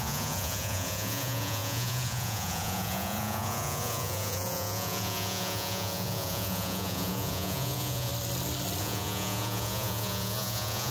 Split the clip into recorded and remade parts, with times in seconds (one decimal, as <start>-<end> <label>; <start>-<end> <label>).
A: 0.0-8.1 remade; 8.1-8.8 recorded; 8.8-10.9 remade